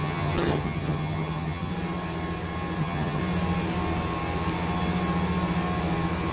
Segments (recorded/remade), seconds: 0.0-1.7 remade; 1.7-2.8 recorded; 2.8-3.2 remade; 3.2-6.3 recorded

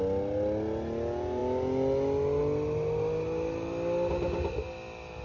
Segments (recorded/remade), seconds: 0.0-5.2 recorded

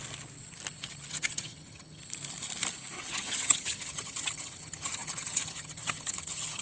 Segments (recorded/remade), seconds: 0.0-1.1 recorded; 1.1-2.0 remade; 2.0-3.0 recorded; 3.0-6.6 remade

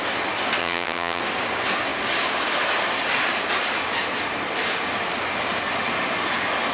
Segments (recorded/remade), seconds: 0.0-0.6 recorded; 0.6-1.2 remade; 1.2-6.7 recorded

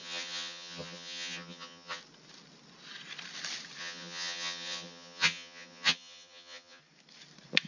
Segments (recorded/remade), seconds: 0.0-2.0 remade; 2.0-3.8 recorded; 3.8-6.8 remade; 6.8-7.7 recorded

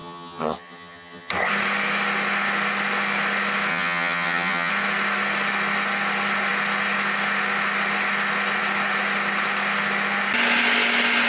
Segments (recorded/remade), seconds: 0.0-1.3 remade; 1.3-3.7 recorded; 3.7-4.7 remade; 4.7-11.3 recorded

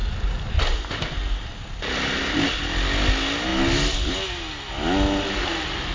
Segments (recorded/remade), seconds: 0.0-5.9 recorded